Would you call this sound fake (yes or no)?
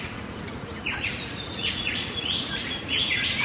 yes